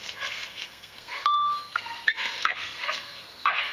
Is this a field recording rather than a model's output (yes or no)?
no